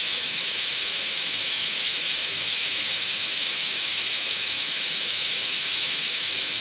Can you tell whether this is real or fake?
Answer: fake